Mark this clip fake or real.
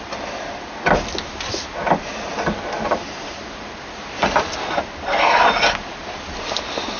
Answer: real